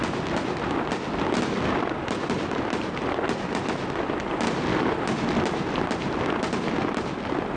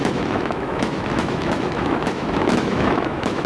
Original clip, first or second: first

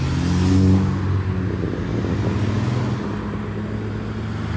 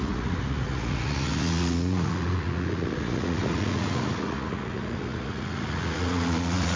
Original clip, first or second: first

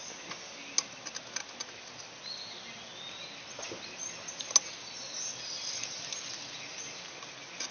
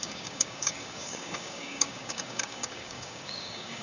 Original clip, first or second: first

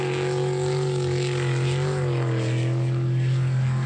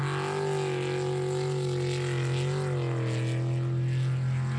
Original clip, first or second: second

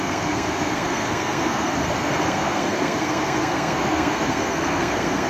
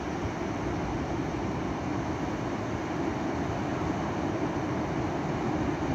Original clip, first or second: second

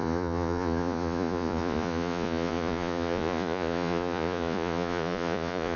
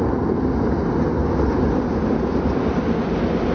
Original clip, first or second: second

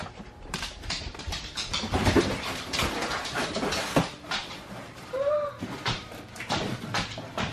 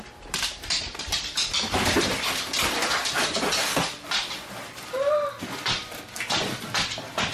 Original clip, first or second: second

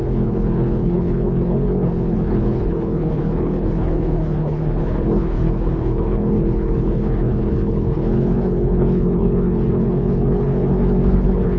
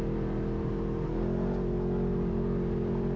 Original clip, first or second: second